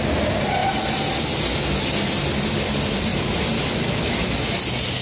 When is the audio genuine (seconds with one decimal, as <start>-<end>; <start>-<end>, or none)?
0.0-3.1; 4.0-5.0